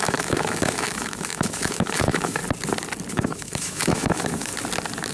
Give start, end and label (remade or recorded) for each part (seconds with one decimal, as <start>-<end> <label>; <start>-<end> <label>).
0.0-2.4 remade; 2.4-3.1 recorded; 3.1-4.5 remade; 4.5-5.1 recorded